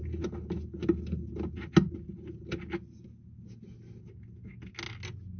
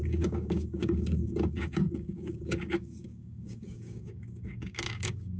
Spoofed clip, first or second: second